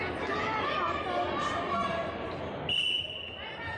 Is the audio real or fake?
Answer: real